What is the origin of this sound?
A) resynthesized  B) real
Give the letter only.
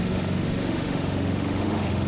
A